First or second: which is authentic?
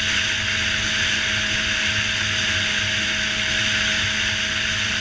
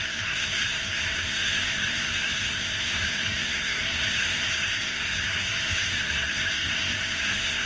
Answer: first